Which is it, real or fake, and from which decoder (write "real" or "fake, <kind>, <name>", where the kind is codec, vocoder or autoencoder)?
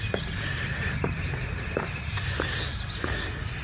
real